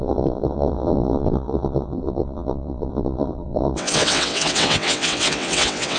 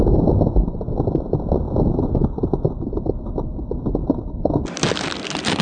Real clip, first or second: second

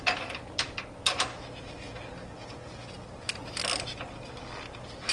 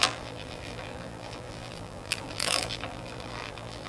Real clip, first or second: first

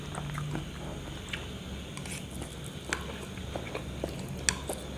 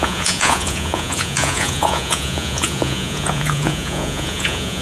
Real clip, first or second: first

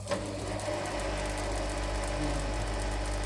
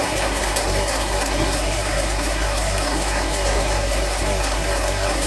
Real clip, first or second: first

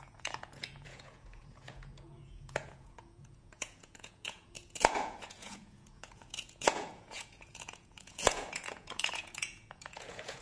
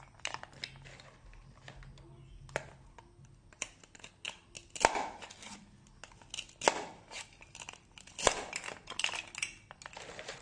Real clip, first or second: second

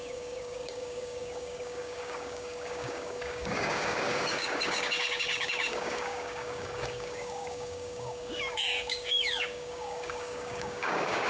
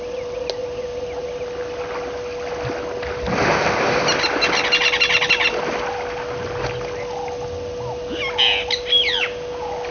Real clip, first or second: second